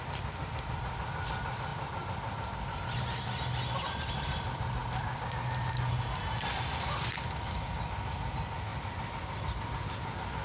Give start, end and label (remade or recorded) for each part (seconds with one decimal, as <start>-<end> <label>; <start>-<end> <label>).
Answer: 0.0-10.4 recorded